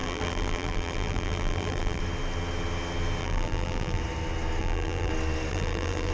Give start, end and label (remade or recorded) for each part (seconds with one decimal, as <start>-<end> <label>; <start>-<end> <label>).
0.0-2.0 remade; 2.0-3.2 recorded; 3.2-4.0 remade; 4.0-4.6 recorded; 4.6-5.1 remade; 5.1-5.5 recorded; 5.5-6.1 remade